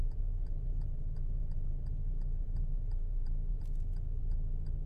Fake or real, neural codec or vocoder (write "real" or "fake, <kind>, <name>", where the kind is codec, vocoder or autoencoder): fake, vocoder, BigVGAN v2